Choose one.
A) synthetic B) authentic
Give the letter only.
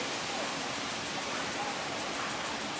B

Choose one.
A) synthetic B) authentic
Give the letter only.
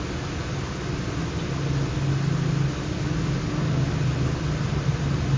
B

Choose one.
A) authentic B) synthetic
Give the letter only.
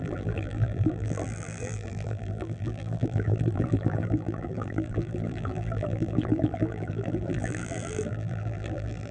B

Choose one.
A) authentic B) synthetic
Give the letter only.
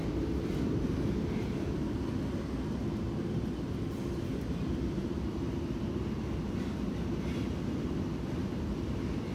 A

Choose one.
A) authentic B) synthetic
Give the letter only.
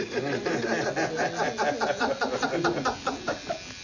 A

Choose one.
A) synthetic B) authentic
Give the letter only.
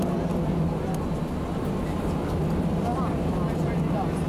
B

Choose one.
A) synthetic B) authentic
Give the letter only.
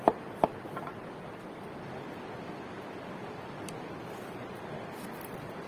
B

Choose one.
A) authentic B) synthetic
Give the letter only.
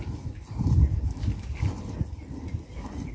A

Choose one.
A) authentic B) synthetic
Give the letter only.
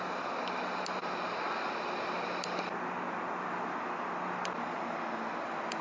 A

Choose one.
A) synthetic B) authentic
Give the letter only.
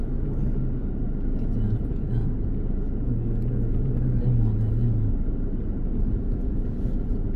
B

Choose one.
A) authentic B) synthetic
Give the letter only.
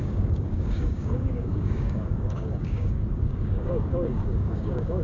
B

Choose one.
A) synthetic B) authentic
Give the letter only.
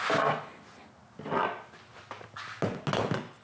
B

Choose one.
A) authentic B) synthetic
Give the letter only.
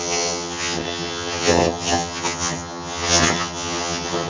B